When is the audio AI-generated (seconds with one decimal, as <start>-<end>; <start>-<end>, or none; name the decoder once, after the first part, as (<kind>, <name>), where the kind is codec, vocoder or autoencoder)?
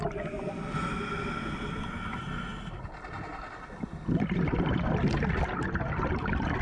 none